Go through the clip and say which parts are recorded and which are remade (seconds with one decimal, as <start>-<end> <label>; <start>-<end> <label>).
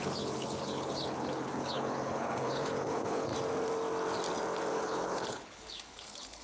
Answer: 0.0-3.3 remade; 3.3-4.7 recorded; 4.7-6.4 remade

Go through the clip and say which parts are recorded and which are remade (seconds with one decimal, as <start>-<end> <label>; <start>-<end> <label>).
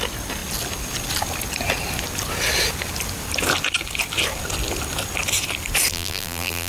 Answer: 0.0-5.9 recorded; 5.9-6.7 remade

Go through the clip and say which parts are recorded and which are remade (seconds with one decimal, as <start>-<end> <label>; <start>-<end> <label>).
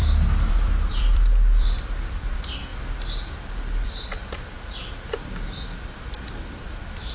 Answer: 0.0-0.5 recorded; 0.5-2.7 remade; 2.7-3.4 recorded; 3.4-4.2 remade; 4.2-6.6 recorded; 6.6-7.1 remade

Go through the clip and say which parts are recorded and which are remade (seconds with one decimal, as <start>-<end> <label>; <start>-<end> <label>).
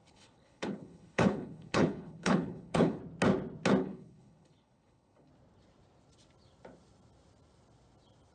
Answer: 0.0-3.0 remade; 3.0-3.8 recorded; 3.8-5.3 remade; 5.3-8.3 recorded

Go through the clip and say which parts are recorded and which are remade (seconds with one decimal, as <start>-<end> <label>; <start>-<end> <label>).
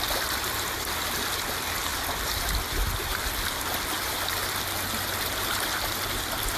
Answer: 0.0-6.6 recorded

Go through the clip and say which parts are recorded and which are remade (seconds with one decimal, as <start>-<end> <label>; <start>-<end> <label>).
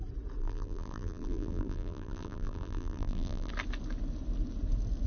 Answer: 0.0-0.4 recorded; 0.4-3.5 remade; 3.5-5.1 recorded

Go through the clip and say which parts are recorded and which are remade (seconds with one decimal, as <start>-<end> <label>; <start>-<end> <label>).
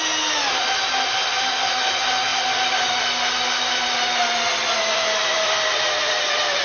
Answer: 0.0-6.6 recorded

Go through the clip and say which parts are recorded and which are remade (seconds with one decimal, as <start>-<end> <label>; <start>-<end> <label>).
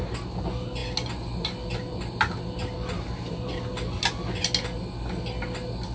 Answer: 0.0-5.9 recorded